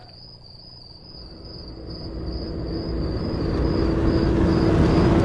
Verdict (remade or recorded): recorded